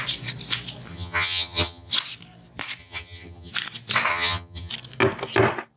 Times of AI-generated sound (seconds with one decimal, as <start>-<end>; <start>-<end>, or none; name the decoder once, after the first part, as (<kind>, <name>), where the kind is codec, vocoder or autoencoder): 0.9-1.9 (vocoder, HiFi-GAN); 2.8-3.5; 4.1-4.7